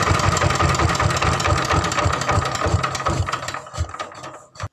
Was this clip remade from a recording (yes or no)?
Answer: no